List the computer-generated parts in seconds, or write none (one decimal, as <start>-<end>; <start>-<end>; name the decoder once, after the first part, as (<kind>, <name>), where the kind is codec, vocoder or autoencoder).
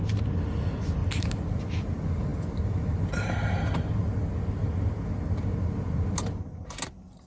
none